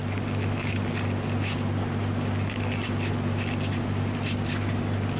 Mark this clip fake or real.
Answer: real